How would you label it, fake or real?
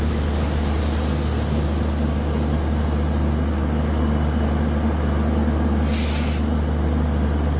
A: real